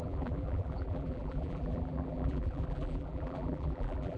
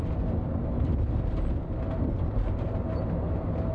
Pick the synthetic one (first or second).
first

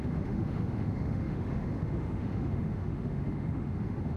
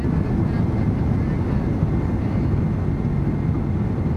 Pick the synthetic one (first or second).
first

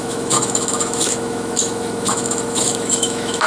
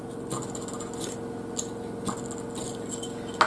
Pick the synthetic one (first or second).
first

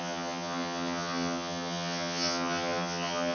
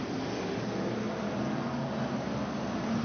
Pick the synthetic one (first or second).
first